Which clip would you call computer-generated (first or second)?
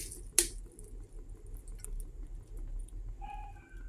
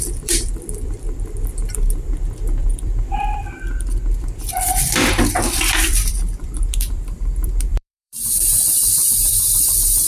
second